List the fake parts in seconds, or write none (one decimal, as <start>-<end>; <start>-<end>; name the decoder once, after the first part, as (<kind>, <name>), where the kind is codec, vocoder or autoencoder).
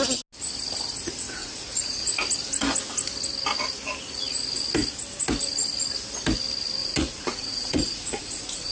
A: 1.4-2.1 (vocoder, Vocos); 6.8-8.7